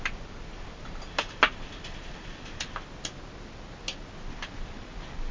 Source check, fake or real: real